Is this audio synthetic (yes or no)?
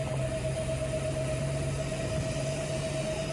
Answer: yes